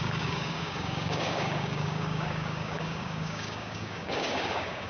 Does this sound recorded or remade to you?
remade